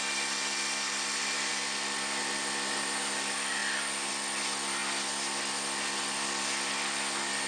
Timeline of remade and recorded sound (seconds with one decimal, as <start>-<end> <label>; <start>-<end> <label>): 0.0-7.5 recorded